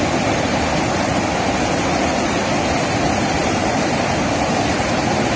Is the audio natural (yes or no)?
yes